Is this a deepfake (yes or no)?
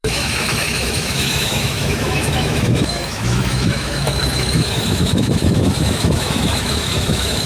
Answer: yes